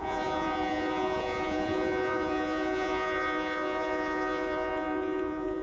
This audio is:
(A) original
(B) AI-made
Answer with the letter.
B